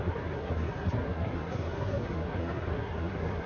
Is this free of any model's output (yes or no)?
no